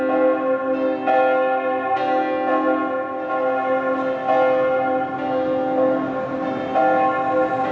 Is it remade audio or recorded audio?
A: recorded